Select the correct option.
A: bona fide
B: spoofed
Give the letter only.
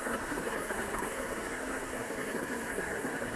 B